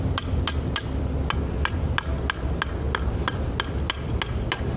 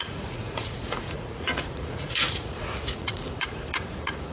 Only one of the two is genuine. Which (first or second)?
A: first